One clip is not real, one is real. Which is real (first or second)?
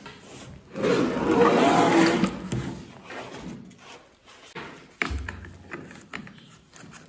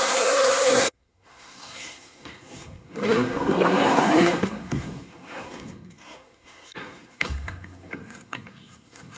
first